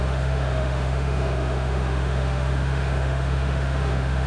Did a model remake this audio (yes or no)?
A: yes